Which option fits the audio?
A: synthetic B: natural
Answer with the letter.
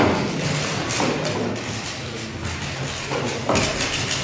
B